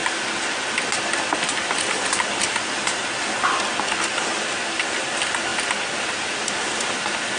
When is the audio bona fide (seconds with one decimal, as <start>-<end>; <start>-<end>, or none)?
5.5-6.1